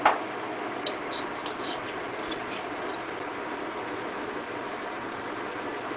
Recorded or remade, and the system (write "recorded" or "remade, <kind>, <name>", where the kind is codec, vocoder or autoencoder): recorded